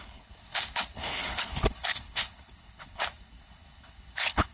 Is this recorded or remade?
remade